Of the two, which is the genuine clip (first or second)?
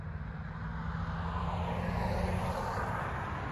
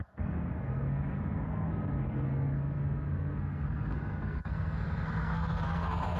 first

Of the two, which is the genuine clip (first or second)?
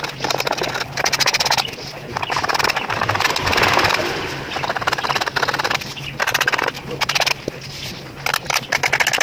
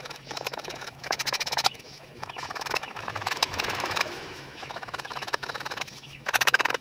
first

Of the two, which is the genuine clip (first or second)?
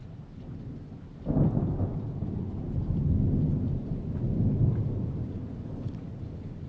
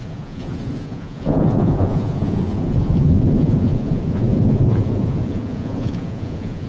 first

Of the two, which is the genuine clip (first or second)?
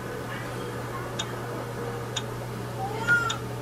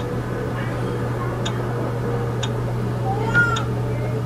second